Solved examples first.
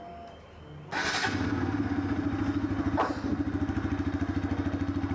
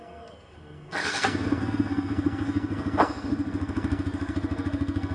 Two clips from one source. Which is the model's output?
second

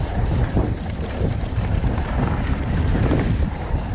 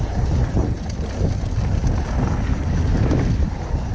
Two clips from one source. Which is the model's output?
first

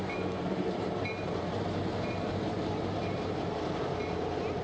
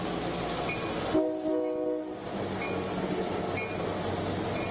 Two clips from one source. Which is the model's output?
first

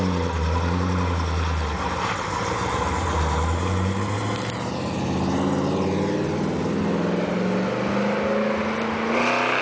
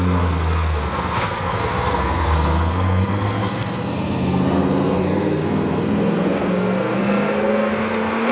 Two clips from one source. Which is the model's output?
second